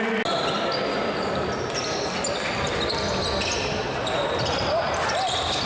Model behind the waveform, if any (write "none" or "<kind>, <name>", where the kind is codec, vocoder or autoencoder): none